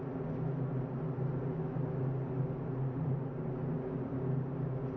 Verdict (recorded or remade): recorded